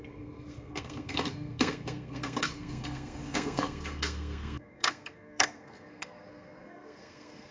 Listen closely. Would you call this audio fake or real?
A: fake